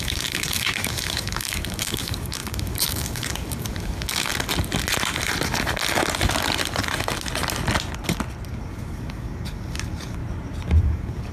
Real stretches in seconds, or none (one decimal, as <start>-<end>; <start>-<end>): 4.3-8.5; 10.2-10.8